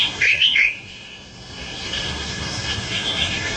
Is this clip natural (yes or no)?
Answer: no